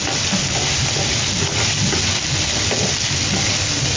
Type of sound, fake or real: real